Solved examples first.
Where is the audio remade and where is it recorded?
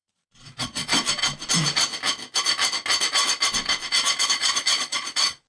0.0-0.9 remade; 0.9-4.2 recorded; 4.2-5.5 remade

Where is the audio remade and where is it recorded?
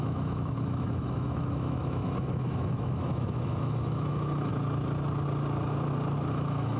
0.0-4.5 remade; 4.5-6.3 recorded; 6.3-6.8 remade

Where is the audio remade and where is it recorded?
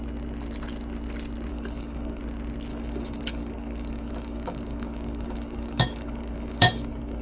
0.0-1.5 recorded; 1.5-2.2 remade; 2.2-2.7 recorded; 2.7-7.2 remade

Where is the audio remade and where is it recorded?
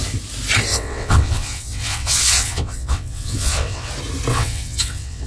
0.0-0.7 recorded; 0.7-3.9 remade; 3.9-4.3 recorded; 4.3-5.3 remade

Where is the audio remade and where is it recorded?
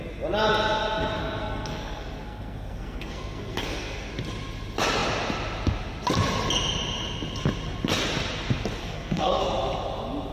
0.0-1.2 recorded; 1.2-4.1 remade; 4.1-8.8 recorded; 8.8-9.4 remade; 9.4-10.3 recorded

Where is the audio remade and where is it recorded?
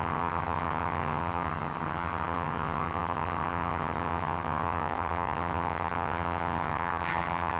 0.0-7.6 remade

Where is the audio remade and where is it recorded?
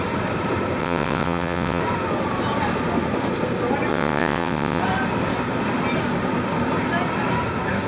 0.0-0.8 recorded; 0.8-1.8 remade; 1.8-3.9 recorded; 3.9-4.8 remade; 4.8-7.9 recorded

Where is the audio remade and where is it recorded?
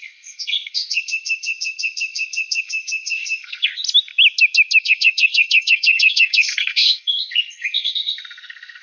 0.0-3.7 remade; 3.7-4.8 recorded; 4.8-8.8 remade